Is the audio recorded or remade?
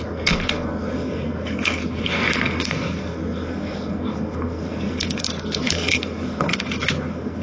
remade